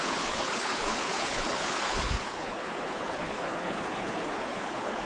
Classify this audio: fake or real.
fake